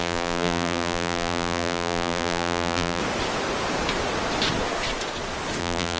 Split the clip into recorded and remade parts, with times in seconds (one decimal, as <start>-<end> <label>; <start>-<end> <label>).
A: 0.0-3.0 remade; 3.0-5.6 recorded; 5.6-6.0 remade